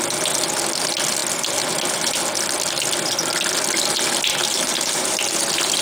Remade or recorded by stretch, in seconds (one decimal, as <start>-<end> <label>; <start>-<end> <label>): 0.0-4.4 recorded; 4.4-5.2 remade; 5.2-5.8 recorded